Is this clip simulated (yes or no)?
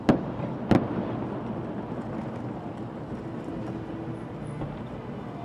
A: no